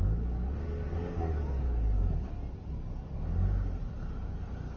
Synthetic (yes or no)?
no